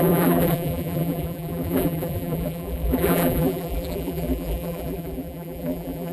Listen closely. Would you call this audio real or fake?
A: fake